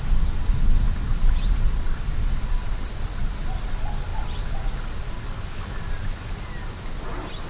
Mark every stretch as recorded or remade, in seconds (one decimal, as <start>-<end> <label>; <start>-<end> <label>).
0.0-7.5 recorded